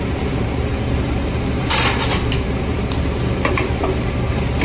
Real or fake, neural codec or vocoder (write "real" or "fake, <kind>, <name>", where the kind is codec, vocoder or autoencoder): fake, vocoder, BigVGAN v2